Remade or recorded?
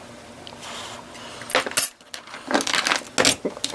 recorded